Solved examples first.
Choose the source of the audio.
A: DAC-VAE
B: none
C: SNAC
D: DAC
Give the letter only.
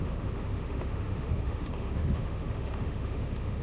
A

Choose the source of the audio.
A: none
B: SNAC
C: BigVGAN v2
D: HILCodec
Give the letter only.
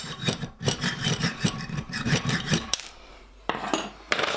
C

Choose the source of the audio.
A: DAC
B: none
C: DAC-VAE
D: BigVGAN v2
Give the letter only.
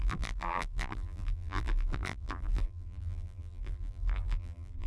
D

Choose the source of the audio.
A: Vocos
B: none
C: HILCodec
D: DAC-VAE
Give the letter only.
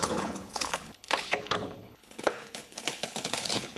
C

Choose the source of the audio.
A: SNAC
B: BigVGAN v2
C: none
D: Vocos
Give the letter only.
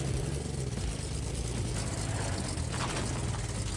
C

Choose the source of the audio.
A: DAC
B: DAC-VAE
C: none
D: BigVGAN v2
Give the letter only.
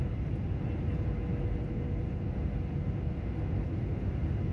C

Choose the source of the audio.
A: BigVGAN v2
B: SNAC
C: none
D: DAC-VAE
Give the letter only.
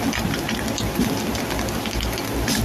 A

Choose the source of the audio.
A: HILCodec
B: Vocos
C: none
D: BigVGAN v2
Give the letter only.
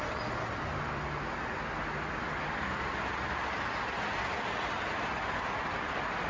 C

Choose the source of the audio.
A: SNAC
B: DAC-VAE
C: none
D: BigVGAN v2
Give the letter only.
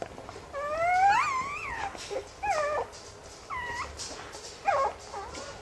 C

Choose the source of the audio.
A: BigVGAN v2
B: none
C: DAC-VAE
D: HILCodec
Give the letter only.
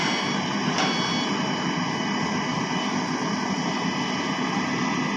B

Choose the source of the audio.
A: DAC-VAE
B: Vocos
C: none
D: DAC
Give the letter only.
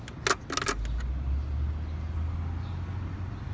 C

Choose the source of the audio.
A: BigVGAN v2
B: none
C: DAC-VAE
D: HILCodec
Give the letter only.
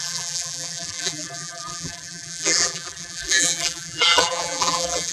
A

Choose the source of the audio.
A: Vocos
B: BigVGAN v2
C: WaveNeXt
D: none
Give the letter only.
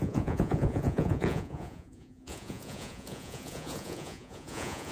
A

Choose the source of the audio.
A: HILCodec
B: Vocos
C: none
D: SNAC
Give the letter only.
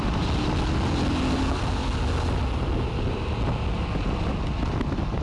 C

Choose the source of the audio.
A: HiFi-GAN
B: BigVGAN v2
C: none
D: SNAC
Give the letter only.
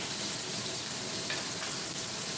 C